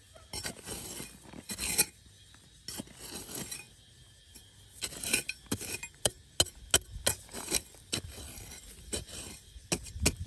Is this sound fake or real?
real